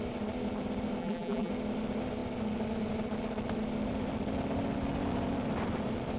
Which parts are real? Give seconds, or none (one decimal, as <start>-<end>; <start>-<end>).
0.0-1.0; 1.5-6.2